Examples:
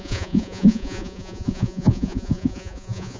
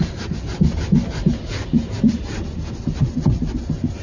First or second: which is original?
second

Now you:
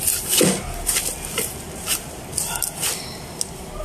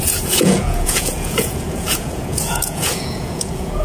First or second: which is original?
first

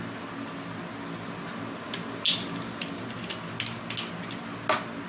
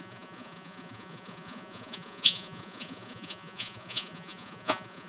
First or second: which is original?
first